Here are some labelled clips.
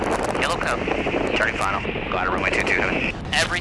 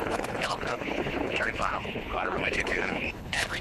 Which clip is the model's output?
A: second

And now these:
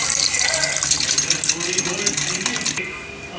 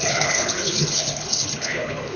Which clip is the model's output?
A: second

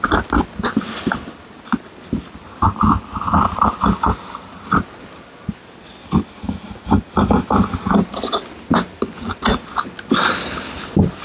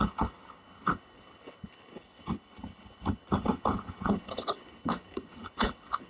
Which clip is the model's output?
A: second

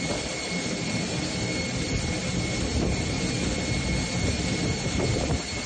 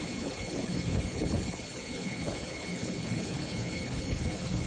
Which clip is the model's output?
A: second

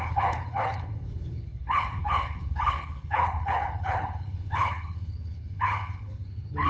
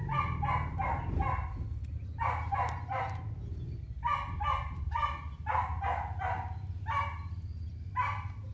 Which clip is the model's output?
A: first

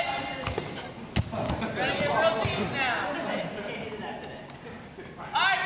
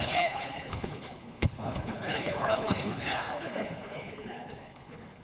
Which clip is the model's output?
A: second